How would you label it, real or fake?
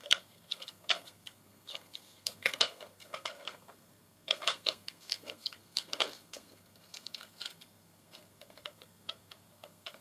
fake